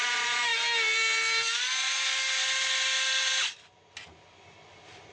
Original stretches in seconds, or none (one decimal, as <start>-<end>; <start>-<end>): 0.0-5.1